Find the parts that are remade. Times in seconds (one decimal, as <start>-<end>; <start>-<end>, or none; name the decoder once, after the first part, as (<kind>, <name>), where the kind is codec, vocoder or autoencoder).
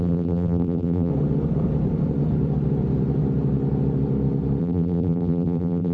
0.0-1.1 (vocoder, BigVGAN v2); 4.6-5.9